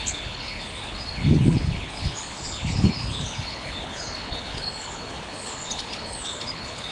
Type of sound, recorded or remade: remade